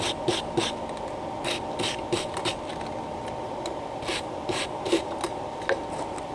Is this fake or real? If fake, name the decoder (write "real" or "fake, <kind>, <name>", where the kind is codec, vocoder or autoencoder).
real